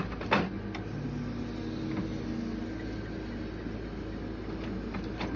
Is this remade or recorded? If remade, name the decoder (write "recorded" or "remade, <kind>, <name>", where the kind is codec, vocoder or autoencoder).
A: recorded